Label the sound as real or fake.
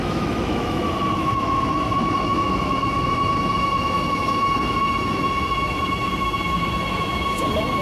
fake